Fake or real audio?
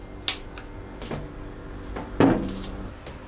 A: real